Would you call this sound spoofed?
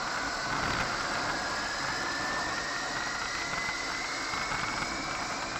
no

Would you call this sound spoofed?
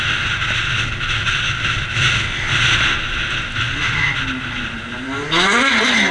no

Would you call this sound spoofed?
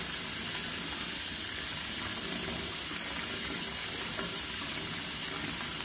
no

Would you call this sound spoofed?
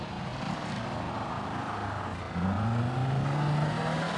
no